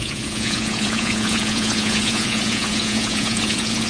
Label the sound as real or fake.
fake